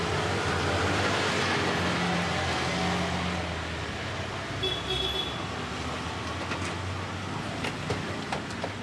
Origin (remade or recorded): recorded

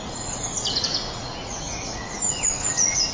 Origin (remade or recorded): remade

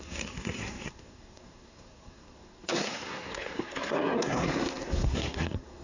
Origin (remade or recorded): remade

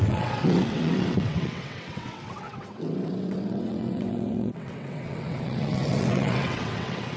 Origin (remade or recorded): remade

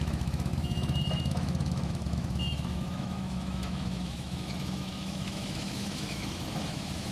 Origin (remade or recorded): remade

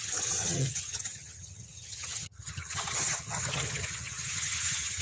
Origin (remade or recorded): remade